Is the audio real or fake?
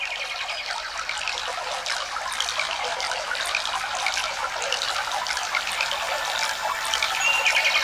real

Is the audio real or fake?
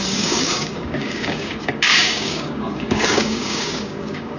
fake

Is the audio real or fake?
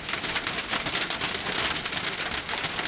real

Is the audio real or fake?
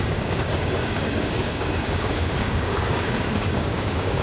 fake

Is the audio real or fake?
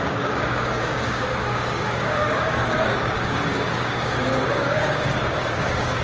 fake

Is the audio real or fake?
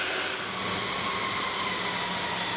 real